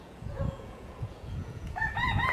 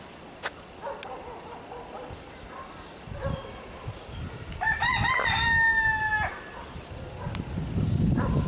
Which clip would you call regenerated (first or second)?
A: first